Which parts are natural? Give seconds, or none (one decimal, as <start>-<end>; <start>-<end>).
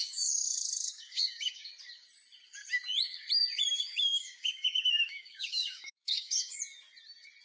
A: 1.7-3.7; 6.6-7.4